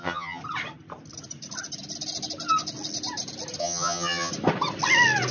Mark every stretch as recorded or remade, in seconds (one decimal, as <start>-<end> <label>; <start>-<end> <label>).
0.0-0.4 remade; 0.4-3.6 recorded; 3.6-4.3 remade; 4.3-5.3 recorded